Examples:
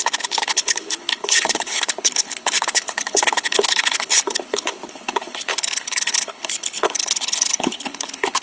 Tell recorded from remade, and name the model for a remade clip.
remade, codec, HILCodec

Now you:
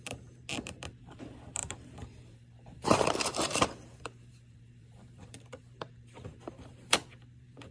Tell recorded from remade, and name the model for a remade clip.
remade, vocoder, BigVGAN v2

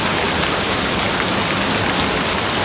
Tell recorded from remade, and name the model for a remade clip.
recorded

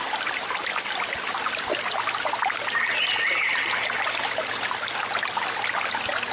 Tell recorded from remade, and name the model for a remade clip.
recorded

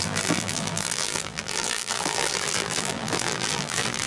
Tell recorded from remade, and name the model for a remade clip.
remade, vocoder, BigVGAN v2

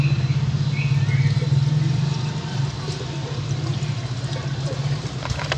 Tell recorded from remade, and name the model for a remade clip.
recorded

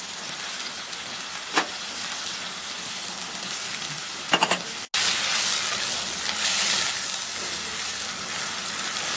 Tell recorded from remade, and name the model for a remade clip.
recorded